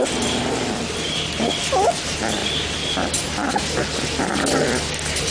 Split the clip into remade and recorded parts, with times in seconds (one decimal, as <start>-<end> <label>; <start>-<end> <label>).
0.0-5.3 recorded